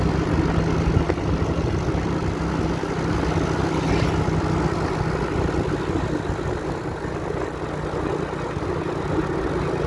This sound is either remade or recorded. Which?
recorded